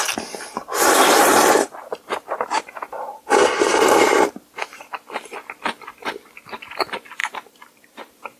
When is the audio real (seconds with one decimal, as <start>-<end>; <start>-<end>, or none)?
0.0-0.6; 4.8-7.2